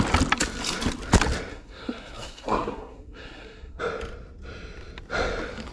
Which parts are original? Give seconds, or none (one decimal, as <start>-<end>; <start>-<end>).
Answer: 0.0-1.5; 3.8-5.7